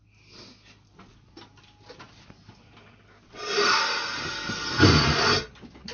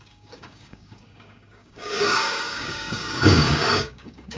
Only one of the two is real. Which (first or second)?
first